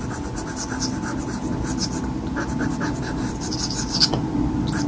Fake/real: real